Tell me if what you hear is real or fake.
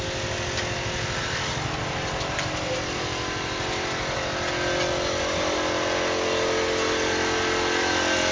real